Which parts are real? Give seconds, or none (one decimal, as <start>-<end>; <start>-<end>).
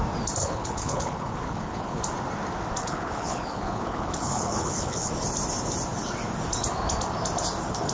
0.0-0.4; 2.0-2.8; 5.1-7.9